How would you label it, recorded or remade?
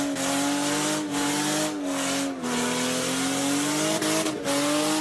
recorded